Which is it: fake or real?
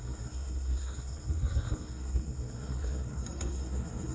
fake